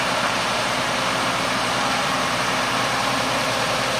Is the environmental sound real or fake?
fake